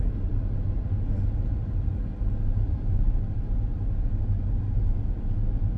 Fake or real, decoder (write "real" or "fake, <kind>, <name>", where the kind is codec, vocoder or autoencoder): real